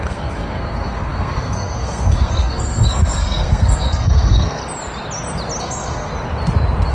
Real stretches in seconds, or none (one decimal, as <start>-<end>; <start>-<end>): 4.6-5.6; 6.1-6.9